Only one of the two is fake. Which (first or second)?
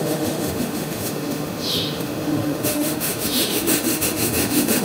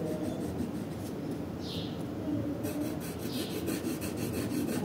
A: first